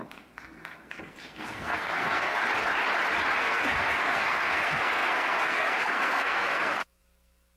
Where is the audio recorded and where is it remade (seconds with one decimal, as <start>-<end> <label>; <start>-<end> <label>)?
0.0-2.4 remade; 2.4-3.4 recorded; 3.4-7.6 remade